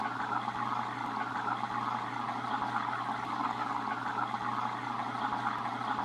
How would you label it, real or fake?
real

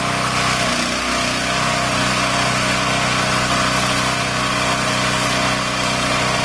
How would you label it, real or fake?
real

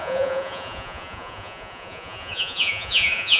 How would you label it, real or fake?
fake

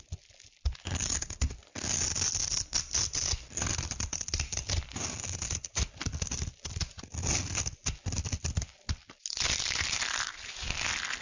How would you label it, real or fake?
real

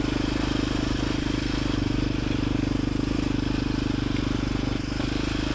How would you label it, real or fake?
real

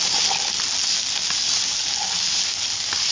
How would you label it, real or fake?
real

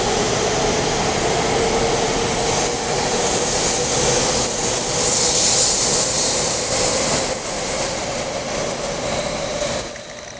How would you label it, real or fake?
real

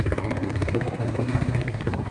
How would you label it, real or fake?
fake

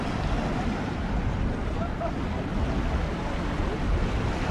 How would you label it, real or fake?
real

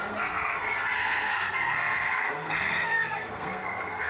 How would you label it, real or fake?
fake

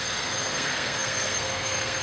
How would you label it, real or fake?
fake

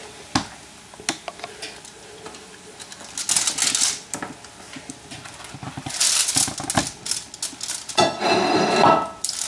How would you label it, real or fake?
real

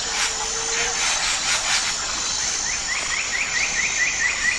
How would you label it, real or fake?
real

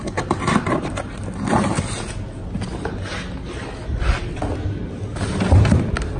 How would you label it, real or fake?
real